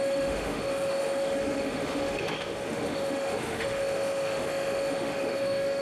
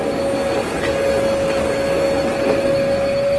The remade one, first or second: first